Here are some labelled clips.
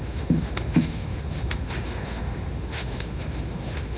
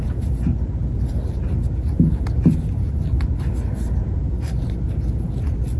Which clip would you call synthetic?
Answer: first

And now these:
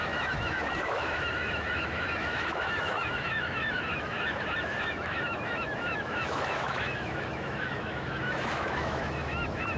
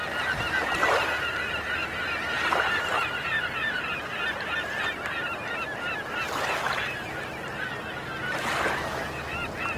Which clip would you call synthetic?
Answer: first